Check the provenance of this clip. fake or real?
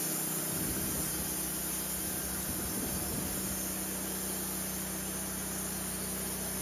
real